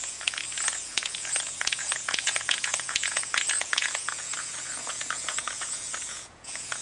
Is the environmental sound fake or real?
fake